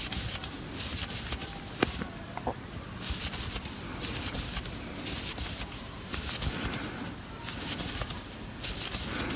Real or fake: real